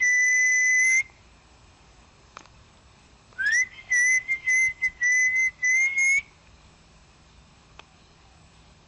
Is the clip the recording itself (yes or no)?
no